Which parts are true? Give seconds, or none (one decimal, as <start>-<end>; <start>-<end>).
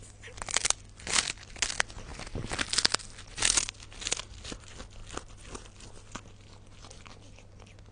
0.0-7.9